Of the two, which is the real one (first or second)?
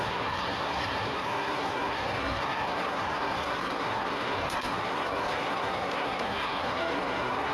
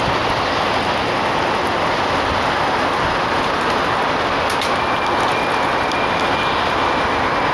second